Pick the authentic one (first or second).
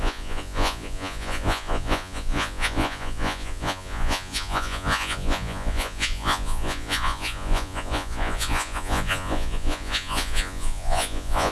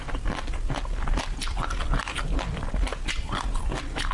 second